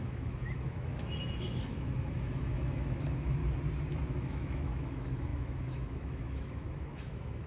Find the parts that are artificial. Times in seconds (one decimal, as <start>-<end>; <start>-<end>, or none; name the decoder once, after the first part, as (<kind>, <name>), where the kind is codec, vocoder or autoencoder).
0.0-3.4 (autoencoder, DAC-VAE); 4.1-7.5